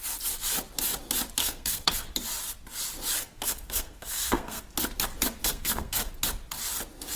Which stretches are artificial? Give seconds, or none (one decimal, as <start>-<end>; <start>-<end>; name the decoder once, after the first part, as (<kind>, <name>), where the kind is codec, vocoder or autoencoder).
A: 1.4-2.1 (codec, SNAC); 3.2-4.6; 5.4-6.1